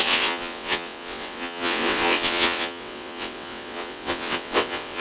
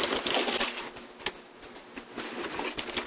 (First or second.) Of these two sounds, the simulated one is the first